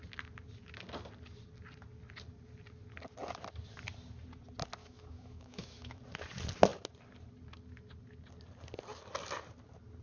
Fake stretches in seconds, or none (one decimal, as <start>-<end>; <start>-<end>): 4.8-6.0